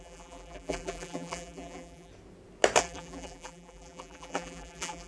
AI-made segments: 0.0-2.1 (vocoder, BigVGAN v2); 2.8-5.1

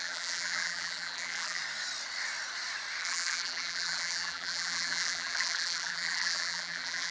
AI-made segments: 0.0-1.6 (vocoder, BigVGAN v2); 3.0-7.1

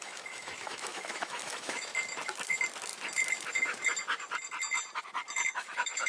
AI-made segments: 0.0-1.9 (autoencoder, DAC-VAE); 5.5-6.1

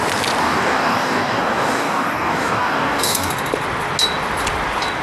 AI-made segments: 0.4-3.3 (codec, DAC)

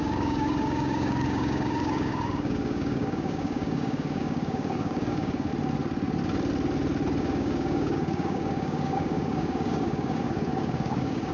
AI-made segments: 0.0-5.5 (codec, DAC); 7.2-11.3

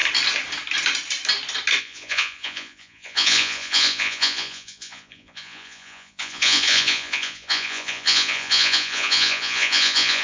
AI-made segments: 1.8-10.2 (vocoder, Vocos)